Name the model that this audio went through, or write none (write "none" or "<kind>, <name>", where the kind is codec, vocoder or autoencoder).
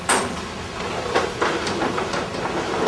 none